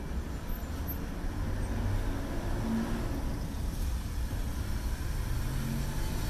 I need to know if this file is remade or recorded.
recorded